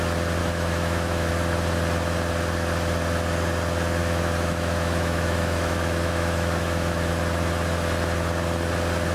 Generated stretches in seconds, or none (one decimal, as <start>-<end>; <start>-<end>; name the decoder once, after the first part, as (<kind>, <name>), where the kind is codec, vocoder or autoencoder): 0.4-1.3 (autoencoder, DAC-VAE); 4.0-7.1